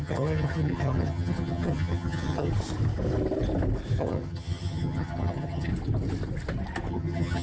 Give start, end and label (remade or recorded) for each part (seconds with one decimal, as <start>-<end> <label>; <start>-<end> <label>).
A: 0.0-2.5 remade; 2.5-4.0 recorded; 4.0-5.7 remade; 5.7-6.9 recorded; 6.9-7.4 remade